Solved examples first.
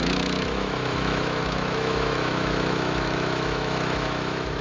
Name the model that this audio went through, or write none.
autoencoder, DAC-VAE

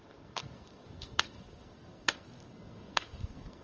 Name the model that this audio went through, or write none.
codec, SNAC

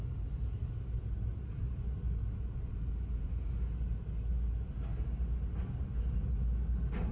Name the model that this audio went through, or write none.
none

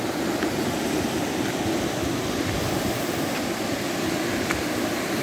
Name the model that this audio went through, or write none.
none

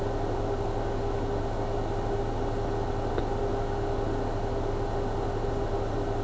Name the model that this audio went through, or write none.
none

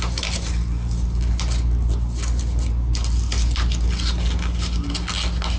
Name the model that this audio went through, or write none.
none